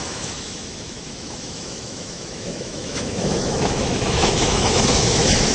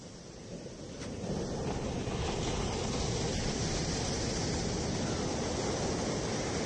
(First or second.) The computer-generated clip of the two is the first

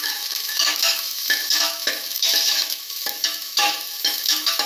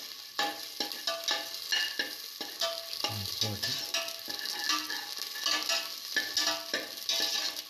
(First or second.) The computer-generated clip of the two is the first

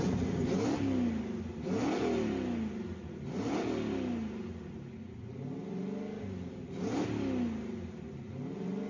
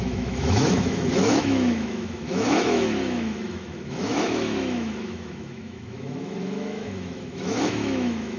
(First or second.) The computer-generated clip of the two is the second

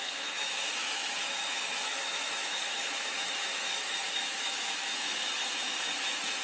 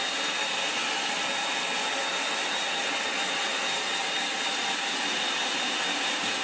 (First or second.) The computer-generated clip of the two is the first